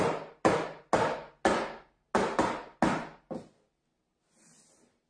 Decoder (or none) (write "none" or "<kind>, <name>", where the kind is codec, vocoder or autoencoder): none